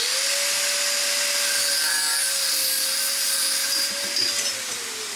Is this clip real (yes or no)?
yes